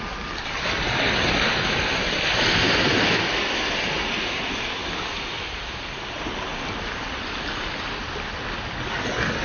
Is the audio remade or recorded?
recorded